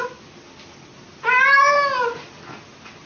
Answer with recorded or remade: recorded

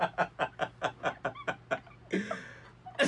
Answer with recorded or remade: recorded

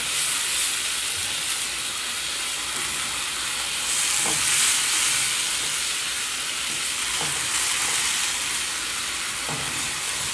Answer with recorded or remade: recorded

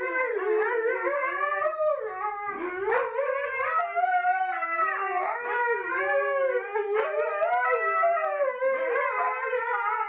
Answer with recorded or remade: recorded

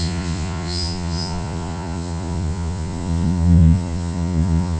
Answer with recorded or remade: remade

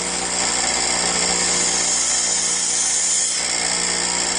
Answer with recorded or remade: recorded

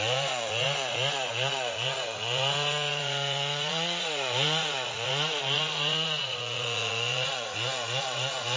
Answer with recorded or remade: remade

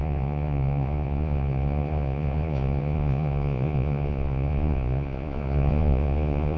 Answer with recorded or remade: remade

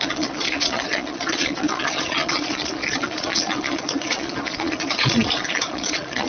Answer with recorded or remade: remade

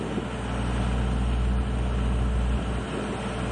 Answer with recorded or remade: recorded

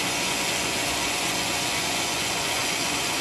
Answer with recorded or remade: remade